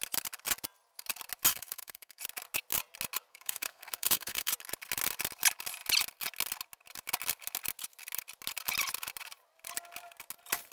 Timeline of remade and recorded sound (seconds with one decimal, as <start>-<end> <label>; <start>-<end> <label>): 0.0-1.5 recorded; 1.5-2.2 remade; 2.2-3.3 recorded; 3.3-4.5 remade; 4.5-10.7 recorded